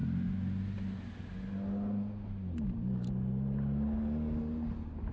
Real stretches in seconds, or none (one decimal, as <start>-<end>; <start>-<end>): 0.0-5.1